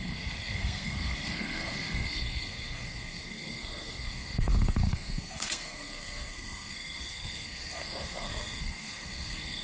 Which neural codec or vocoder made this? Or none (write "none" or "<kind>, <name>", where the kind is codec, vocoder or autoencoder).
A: codec, SNAC